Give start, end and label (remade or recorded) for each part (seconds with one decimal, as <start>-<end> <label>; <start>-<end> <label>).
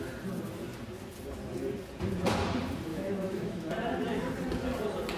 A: 0.0-2.9 recorded; 2.9-3.7 remade; 3.7-5.2 recorded